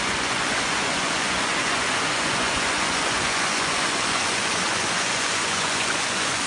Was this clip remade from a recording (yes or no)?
yes